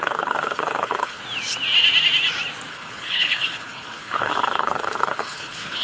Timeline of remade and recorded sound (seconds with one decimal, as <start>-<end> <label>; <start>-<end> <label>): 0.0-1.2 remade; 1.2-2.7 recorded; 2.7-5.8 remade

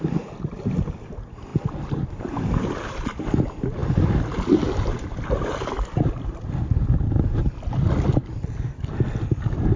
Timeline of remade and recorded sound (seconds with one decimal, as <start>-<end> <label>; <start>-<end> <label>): 0.0-9.8 recorded

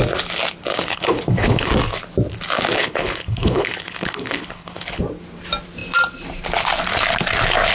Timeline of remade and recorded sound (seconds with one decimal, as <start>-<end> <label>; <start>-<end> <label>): 0.0-0.7 recorded; 0.7-1.7 remade; 1.7-2.8 recorded; 2.8-5.0 remade; 5.0-7.7 recorded

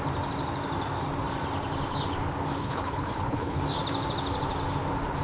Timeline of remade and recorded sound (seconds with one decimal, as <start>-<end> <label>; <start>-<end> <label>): 0.0-2.6 recorded; 2.6-3.6 remade; 3.6-5.2 recorded